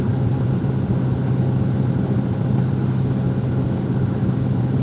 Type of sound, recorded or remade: recorded